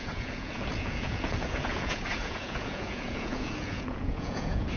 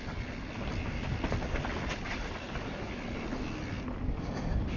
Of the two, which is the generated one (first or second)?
first